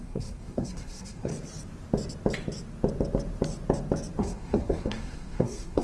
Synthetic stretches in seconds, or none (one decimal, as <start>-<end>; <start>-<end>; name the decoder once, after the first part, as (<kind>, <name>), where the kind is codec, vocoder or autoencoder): 0.0-1.3 (codec, SNAC); 4.2-5.8